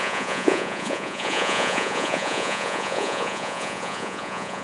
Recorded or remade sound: remade